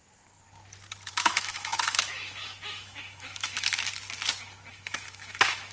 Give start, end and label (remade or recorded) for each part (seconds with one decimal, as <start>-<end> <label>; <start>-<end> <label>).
0.0-1.1 recorded; 1.1-3.9 remade; 3.9-4.7 recorded; 4.7-5.7 remade